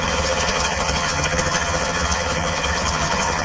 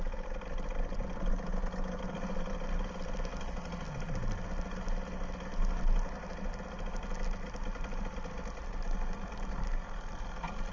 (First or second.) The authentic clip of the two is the second